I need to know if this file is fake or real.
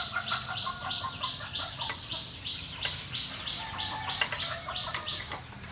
real